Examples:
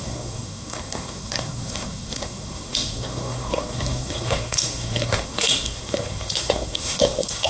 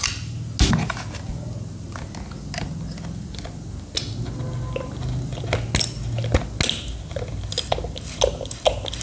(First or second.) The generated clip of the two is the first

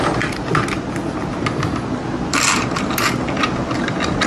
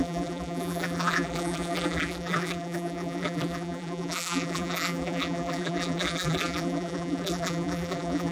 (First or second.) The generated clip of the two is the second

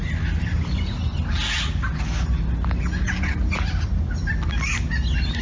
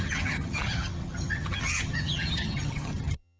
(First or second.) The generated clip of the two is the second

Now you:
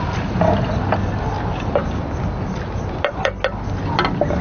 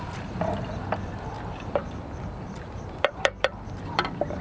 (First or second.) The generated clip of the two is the second